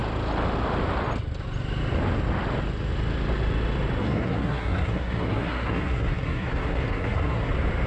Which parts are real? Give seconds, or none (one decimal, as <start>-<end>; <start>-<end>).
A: 0.0-4.0; 7.5-7.9